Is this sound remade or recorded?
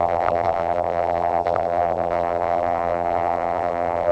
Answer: remade